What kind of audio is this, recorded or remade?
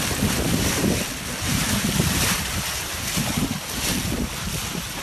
recorded